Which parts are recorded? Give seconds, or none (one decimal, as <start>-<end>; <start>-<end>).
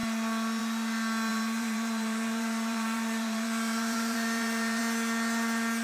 0.0-1.3; 4.8-5.8